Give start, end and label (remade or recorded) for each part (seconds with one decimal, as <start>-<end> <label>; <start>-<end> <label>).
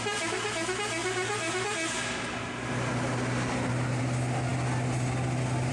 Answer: 0.0-5.7 recorded